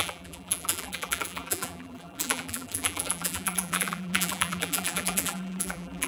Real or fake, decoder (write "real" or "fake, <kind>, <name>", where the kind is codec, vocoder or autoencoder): fake, vocoder, BigVGAN v2